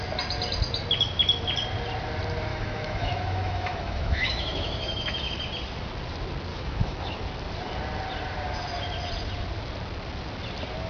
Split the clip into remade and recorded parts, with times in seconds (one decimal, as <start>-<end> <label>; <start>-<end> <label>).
0.0-2.5 recorded; 2.5-5.3 remade; 5.3-6.5 recorded; 6.5-7.2 remade; 7.2-10.9 recorded